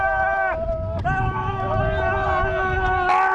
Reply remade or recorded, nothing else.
recorded